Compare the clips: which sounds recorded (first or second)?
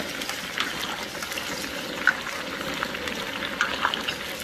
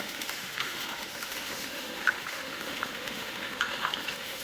first